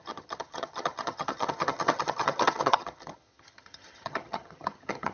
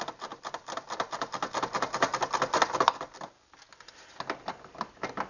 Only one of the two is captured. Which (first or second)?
second